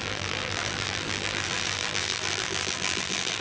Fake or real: fake